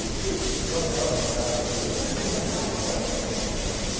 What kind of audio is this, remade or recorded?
remade